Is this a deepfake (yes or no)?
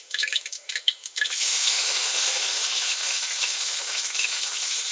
yes